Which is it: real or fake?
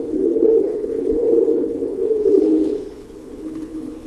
fake